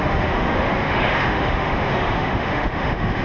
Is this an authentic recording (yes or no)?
no